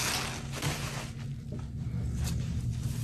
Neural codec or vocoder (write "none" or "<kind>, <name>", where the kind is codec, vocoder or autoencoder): none